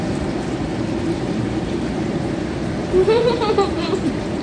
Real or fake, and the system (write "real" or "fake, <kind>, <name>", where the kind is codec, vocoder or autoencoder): fake, vocoder, BigVGAN v2